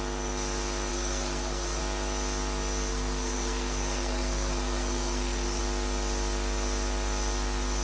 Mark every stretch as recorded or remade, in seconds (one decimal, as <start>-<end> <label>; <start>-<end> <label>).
0.0-0.9 recorded; 0.9-1.8 remade; 1.8-2.9 recorded; 2.9-5.6 remade; 5.6-7.8 recorded